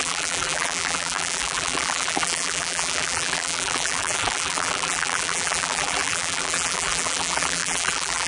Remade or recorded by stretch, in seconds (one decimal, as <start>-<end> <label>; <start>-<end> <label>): 0.0-8.3 remade